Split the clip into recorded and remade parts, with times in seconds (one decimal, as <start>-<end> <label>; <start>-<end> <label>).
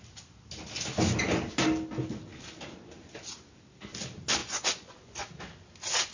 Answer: 0.0-4.4 recorded; 4.4-5.2 remade; 5.2-6.1 recorded